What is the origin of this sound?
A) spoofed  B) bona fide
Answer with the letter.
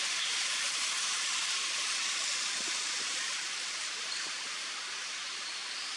B